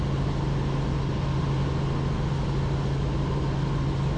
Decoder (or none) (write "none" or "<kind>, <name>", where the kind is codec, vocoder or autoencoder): none